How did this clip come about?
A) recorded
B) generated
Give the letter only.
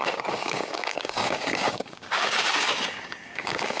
B